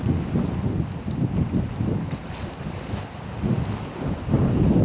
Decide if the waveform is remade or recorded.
recorded